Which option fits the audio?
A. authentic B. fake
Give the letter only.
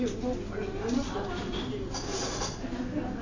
A